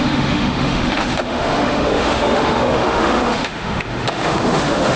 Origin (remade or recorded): remade